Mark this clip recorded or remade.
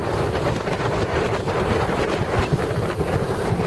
remade